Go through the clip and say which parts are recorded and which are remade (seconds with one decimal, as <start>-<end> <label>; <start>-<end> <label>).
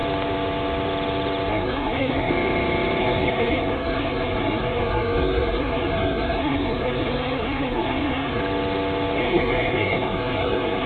0.0-1.5 recorded; 1.5-2.3 remade; 2.3-3.0 recorded; 3.0-8.4 remade; 8.4-9.2 recorded; 9.2-10.9 remade